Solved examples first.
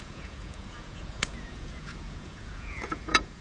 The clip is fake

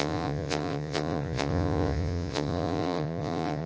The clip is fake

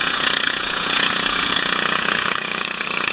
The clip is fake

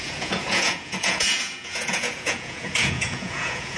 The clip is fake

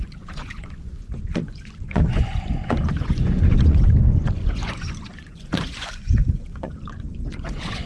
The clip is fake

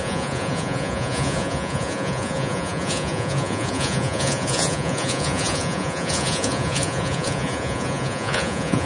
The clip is fake